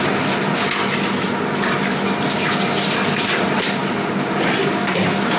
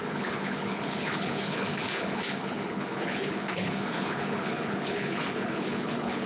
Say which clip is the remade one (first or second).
second